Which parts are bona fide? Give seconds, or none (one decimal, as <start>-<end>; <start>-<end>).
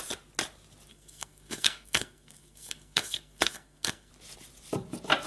0.0-0.9; 4.1-5.3